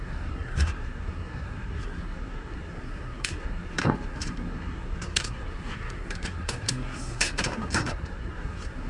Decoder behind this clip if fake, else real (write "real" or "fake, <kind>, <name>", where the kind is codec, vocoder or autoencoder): fake, codec, SNAC